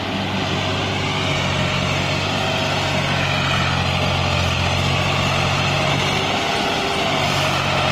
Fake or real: real